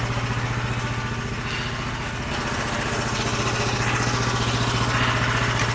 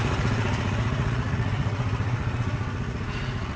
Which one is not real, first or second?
second